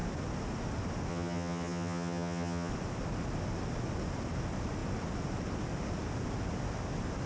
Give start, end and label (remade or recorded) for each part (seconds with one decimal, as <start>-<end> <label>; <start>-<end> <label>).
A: 0.0-1.1 recorded; 1.1-2.7 remade; 2.7-7.3 recorded